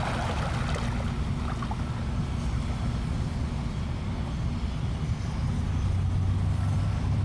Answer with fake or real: real